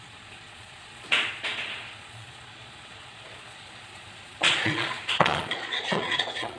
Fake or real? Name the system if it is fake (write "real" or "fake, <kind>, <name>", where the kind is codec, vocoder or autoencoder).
fake, vocoder, Vocos